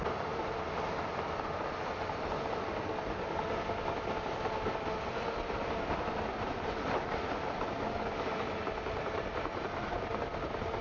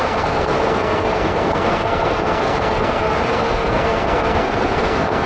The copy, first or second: second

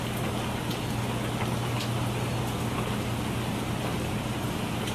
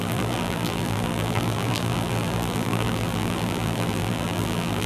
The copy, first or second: second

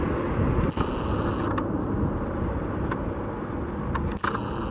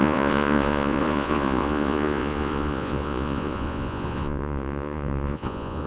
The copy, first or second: second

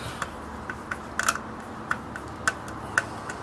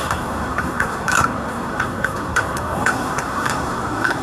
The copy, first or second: second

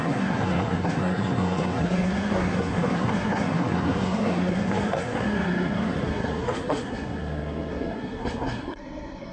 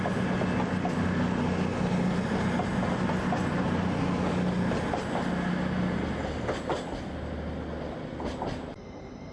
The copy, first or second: first